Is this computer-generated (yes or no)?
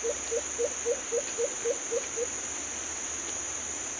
no